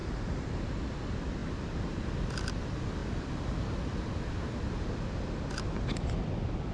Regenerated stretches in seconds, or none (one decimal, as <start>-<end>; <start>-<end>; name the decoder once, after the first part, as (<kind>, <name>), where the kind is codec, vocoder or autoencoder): 0.0-0.8 (vocoder, BigVGAN v2)